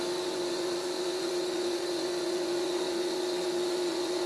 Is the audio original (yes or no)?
no